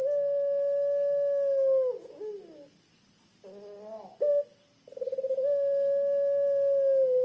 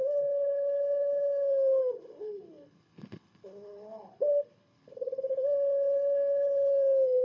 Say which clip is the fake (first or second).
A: second